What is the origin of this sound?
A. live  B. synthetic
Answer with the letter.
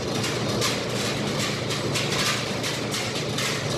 A